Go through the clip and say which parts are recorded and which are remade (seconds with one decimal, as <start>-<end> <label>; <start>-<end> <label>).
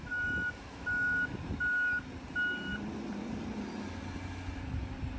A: 0.0-1.4 remade; 1.4-5.2 recorded